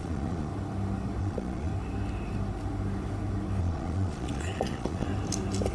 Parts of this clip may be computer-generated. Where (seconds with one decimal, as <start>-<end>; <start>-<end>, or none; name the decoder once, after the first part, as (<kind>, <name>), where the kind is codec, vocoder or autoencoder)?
0.0-0.5 (vocoder, Vocos); 1.2-1.7; 3.6-5.1